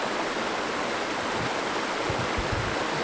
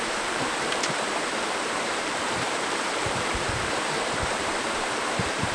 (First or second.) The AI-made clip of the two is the second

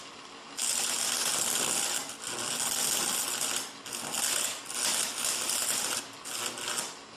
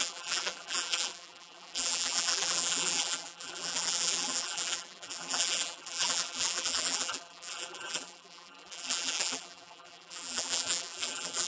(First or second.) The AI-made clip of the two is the second